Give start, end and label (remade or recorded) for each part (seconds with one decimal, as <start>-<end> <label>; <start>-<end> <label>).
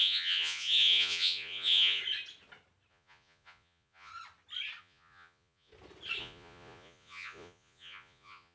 0.0-2.0 remade; 2.0-2.9 recorded; 2.9-4.1 remade; 4.1-4.8 recorded; 4.8-5.7 remade; 5.7-6.2 recorded; 6.2-8.5 remade